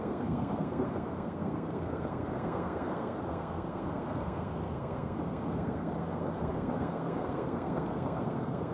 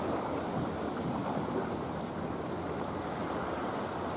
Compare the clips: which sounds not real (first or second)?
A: first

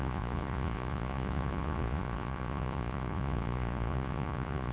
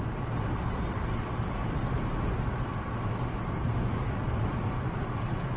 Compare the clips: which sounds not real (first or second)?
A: first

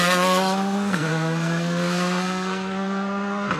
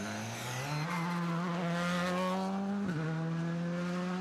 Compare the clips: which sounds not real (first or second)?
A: first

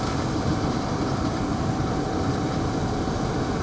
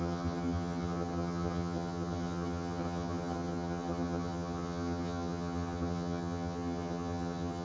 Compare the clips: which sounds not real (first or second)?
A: second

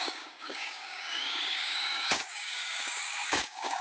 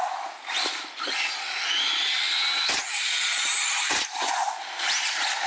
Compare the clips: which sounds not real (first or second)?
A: first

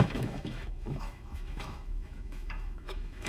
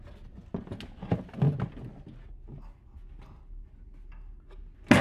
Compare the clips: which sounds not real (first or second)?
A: first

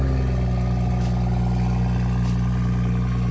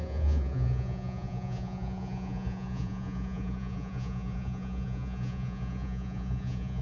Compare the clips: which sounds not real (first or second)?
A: second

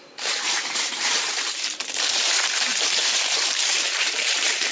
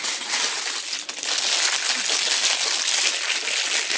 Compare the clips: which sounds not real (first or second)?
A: first